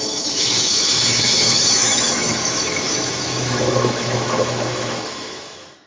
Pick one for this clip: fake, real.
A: fake